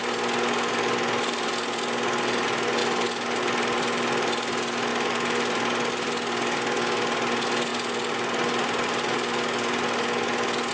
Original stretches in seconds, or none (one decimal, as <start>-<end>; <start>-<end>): 0.0-10.7